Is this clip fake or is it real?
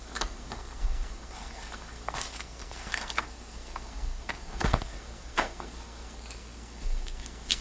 fake